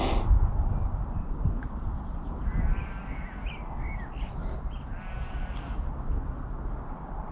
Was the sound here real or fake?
real